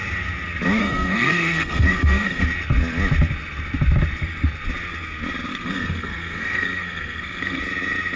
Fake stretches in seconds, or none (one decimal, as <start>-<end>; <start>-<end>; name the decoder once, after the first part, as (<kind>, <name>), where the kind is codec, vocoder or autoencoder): 0.8-2.4 (codec, SNAC); 5.5-7.6